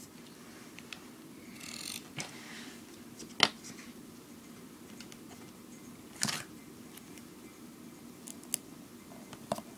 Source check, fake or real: real